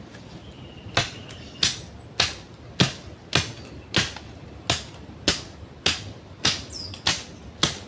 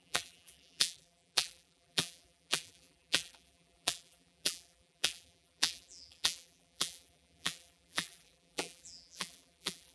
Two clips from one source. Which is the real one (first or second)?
first